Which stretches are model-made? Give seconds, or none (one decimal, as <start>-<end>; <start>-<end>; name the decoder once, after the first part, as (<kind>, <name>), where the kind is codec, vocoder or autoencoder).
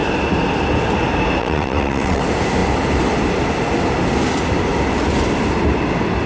1.4-2.2 (vocoder, WaveNeXt)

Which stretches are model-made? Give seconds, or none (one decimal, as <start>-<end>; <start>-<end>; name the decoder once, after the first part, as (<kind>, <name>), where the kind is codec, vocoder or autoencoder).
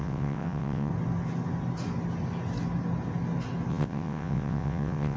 0.0-0.9 (vocoder, WaveNeXt); 3.7-5.2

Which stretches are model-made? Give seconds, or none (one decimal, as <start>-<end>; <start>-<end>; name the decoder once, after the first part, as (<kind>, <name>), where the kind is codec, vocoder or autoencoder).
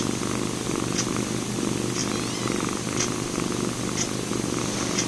none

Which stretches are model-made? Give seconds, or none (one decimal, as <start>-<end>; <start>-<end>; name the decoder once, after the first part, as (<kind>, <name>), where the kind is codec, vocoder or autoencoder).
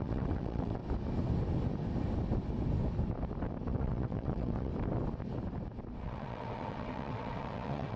0.0-0.8 (vocoder, WaveNeXt); 3.7-4.7; 6.0-8.0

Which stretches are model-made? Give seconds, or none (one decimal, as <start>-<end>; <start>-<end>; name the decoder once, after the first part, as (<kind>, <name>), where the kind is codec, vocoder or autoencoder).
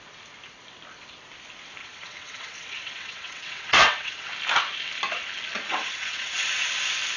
1.8-4.3 (vocoder, WaveNeXt); 5.6-6.7